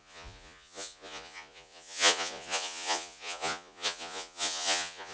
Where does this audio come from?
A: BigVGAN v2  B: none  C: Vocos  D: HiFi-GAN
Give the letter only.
C